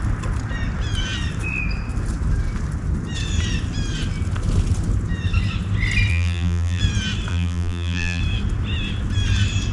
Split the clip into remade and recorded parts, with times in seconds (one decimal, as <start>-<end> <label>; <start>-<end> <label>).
0.0-6.1 recorded; 6.1-6.8 remade; 6.8-7.3 recorded; 7.3-8.2 remade; 8.2-9.7 recorded